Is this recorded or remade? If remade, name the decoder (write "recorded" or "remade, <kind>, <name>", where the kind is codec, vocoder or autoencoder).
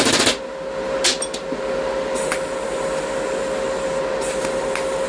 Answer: recorded